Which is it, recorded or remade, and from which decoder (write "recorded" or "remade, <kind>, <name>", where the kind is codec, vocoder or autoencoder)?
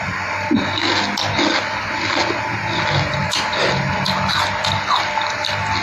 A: recorded